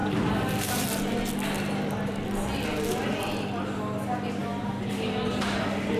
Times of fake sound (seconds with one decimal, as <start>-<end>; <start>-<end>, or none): none